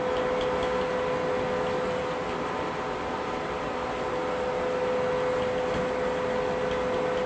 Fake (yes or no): no